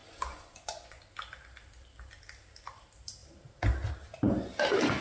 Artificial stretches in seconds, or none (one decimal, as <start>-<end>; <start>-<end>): 0.0-1.0